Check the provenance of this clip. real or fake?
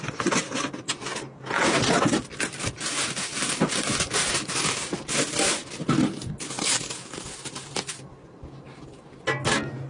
real